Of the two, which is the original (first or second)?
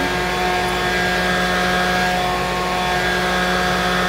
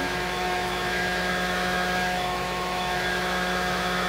first